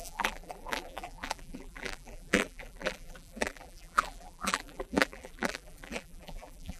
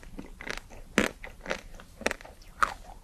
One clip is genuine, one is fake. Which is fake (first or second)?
first